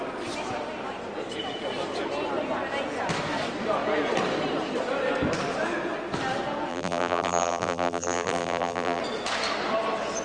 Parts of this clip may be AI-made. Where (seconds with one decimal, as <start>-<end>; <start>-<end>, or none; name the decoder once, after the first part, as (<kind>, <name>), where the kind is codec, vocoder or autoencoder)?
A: 6.7-9.0 (vocoder, BigVGAN v2)